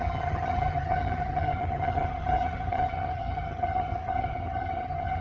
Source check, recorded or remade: remade